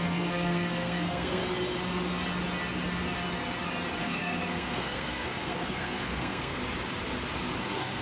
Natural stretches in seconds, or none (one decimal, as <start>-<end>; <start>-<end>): 1.4-4.0; 6.6-7.6